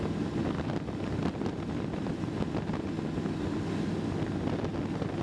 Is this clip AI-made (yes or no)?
no